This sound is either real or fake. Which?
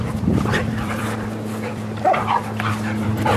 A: fake